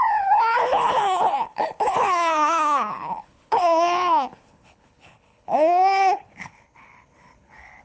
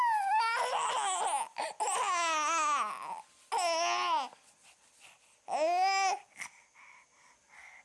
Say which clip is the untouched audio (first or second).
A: second